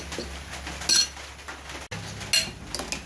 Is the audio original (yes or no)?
yes